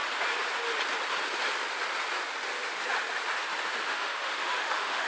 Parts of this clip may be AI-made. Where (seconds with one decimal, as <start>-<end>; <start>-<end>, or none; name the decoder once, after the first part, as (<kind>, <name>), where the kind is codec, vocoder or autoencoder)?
3.9-5.1 (autoencoder, DAC-VAE)